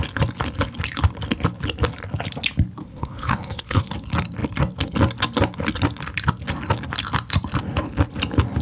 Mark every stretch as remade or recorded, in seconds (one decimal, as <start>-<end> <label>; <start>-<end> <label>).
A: 0.0-2.8 recorded; 2.8-3.9 remade; 3.9-8.6 recorded